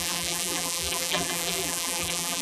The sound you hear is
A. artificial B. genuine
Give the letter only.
A